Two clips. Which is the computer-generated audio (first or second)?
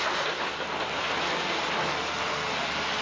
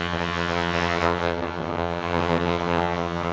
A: second